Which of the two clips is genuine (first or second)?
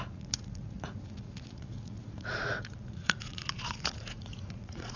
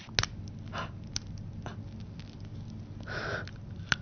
second